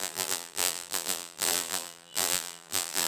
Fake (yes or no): yes